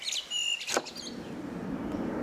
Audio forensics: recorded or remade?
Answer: recorded